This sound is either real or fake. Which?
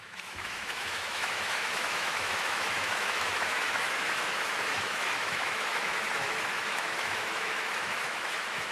fake